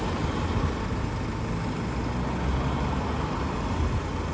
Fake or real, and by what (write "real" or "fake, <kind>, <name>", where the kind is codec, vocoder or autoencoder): real